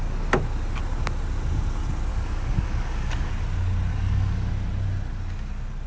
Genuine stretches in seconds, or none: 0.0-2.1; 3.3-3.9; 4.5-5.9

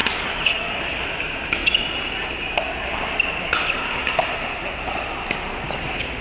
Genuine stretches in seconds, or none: 0.8-6.2

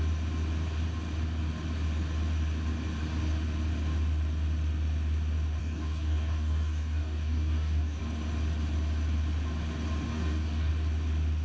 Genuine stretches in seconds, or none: 0.0-5.6; 8.0-10.1; 10.7-11.4

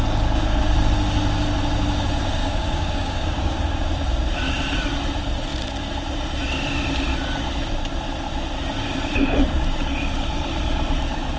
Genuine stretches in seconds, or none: 0.0-2.4; 3.5-11.4

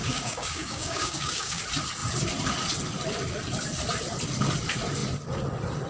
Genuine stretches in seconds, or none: 1.6-5.9

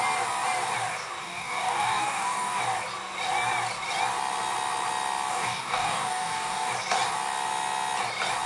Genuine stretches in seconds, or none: 0.0-1.2; 2.6-5.3; 6.7-8.5